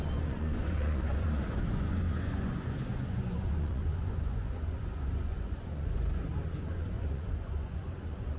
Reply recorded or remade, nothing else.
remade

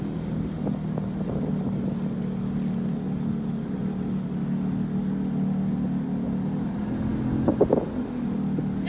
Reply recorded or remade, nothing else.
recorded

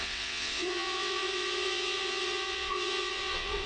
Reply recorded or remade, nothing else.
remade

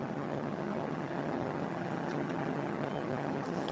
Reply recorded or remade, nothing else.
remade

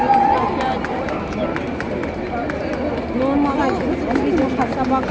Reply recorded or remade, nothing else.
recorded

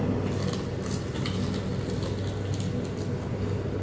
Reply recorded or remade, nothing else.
recorded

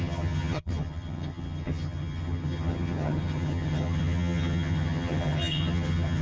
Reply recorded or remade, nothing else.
remade